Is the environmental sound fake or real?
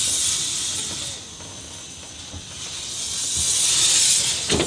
real